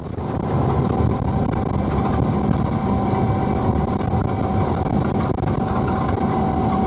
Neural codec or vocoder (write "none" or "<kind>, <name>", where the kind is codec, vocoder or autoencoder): none